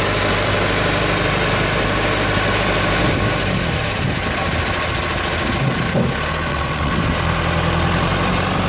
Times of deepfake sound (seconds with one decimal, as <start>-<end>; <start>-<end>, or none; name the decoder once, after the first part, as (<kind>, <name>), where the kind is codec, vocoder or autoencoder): 6.5-7.0 (vocoder, WaveNeXt)